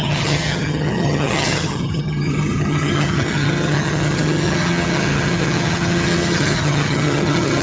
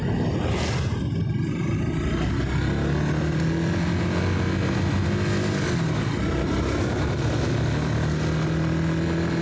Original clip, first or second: second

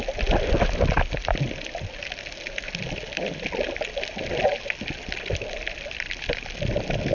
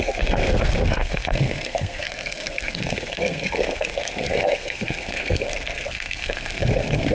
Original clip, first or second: first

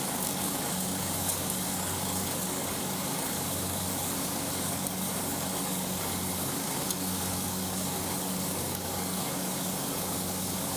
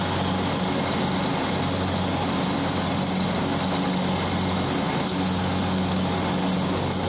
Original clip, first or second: second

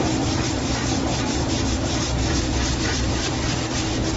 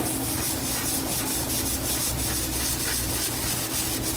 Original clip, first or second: second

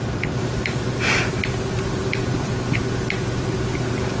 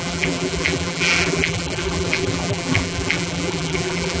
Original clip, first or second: first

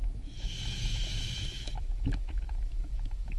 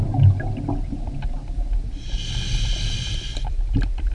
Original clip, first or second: second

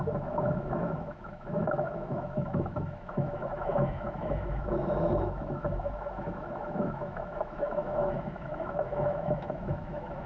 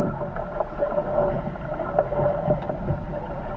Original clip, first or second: second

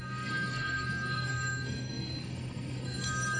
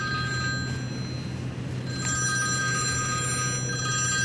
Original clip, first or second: second